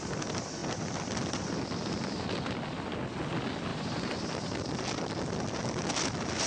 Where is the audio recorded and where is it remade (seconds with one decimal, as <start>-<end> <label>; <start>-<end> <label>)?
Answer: 0.0-0.6 recorded; 0.6-2.6 remade; 2.6-3.7 recorded; 3.7-4.8 remade; 4.8-6.5 recorded